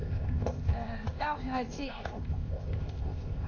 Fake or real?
fake